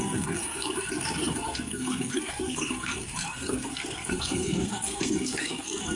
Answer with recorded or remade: remade